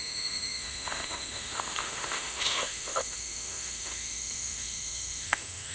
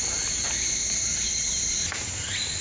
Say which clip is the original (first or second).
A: second